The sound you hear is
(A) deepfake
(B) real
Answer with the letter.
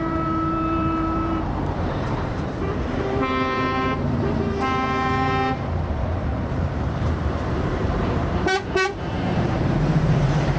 A